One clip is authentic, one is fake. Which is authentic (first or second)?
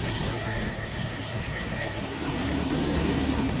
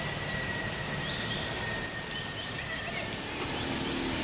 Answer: second